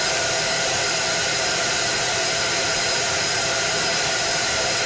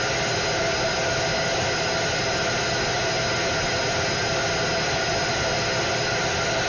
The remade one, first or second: first